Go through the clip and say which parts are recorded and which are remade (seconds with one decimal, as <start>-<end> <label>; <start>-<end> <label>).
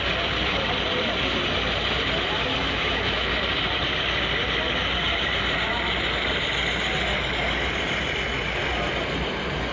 0.0-2.6 recorded; 2.6-3.3 remade; 3.3-9.7 recorded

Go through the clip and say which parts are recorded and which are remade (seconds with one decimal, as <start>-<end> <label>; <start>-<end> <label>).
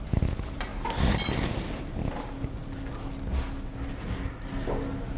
0.0-5.2 recorded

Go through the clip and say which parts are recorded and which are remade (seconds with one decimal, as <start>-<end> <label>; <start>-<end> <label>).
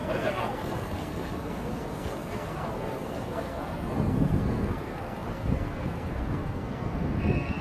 0.0-7.6 remade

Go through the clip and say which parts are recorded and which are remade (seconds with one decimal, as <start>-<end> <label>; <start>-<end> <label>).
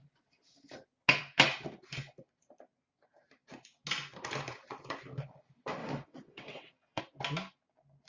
0.0-5.8 recorded; 5.8-7.0 remade; 7.0-8.1 recorded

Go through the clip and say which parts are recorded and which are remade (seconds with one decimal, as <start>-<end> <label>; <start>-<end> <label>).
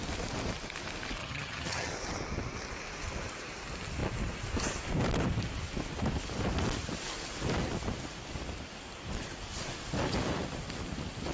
0.0-1.2 recorded; 1.2-1.9 remade; 1.9-11.3 recorded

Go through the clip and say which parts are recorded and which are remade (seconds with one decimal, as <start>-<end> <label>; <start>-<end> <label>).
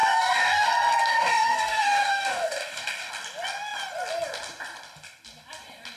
0.0-0.7 remade; 0.7-1.1 recorded; 1.1-3.1 remade; 3.1-6.0 recorded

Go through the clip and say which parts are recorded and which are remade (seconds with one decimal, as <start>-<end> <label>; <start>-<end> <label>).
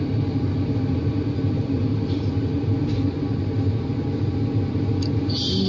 0.0-5.7 recorded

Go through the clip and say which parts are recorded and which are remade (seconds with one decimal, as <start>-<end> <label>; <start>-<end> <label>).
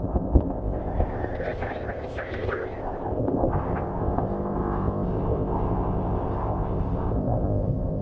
0.0-8.0 remade